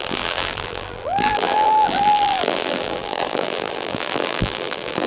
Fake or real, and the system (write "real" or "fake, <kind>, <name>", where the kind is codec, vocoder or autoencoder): fake, vocoder, BigVGAN v2